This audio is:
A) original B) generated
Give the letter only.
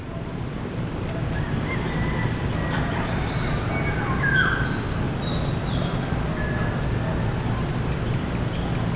A